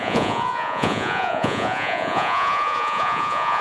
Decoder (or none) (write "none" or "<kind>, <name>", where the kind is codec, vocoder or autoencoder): vocoder, Vocos